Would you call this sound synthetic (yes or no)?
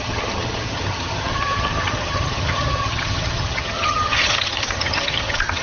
yes